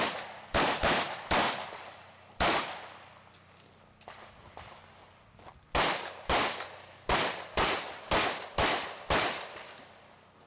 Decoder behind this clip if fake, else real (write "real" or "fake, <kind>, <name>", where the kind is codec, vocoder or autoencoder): real